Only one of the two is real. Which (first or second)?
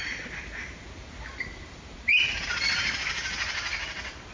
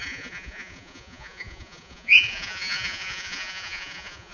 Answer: first